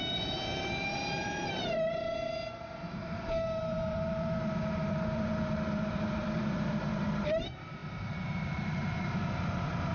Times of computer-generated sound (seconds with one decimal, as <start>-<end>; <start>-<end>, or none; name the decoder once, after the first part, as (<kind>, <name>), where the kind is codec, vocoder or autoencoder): 0.0-9.9 (vocoder, BigVGAN v2)